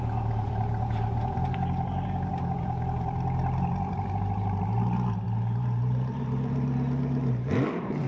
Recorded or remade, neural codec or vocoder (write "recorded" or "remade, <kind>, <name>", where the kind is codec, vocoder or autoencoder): remade, vocoder, BigVGAN v2